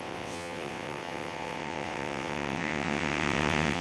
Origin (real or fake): fake